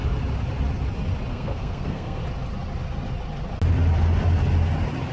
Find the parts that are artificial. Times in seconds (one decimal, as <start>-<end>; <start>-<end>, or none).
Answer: 1.3-2.2